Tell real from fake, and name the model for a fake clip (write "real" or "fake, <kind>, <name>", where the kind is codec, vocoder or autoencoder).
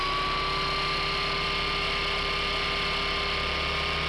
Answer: real